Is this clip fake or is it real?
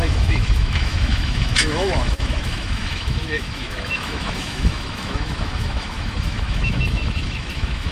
fake